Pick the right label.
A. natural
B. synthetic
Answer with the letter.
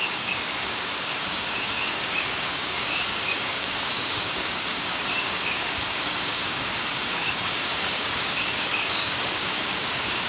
B